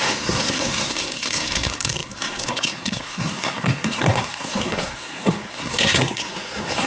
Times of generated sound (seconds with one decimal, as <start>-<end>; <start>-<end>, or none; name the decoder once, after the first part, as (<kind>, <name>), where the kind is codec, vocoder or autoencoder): 0.0-6.9 (codec, SNAC)